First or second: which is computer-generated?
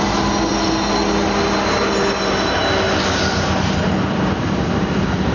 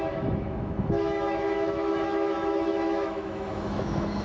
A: second